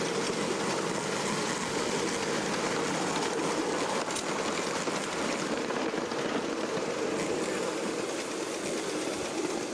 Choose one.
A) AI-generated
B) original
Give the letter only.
B